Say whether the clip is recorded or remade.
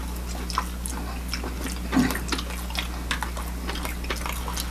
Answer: recorded